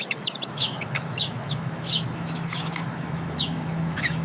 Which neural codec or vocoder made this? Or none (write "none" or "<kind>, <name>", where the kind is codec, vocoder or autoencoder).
autoencoder, DAC-VAE